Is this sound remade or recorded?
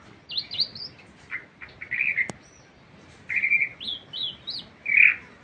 recorded